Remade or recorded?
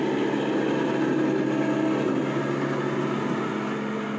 recorded